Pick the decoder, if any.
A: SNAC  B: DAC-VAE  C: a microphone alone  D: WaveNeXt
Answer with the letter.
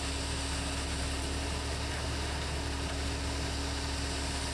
C